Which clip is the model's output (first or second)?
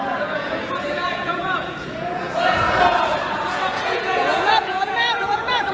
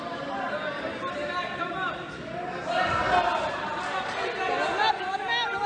first